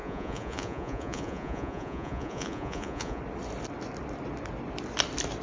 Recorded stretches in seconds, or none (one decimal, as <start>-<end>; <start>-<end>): 3.2-5.4